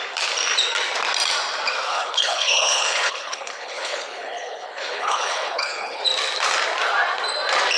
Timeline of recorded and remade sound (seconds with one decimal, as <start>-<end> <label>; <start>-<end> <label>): 0.0-1.9 recorded; 1.9-6.0 remade; 6.0-7.8 recorded